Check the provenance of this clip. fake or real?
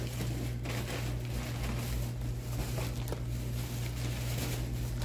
real